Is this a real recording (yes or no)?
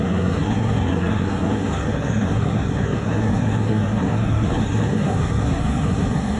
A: no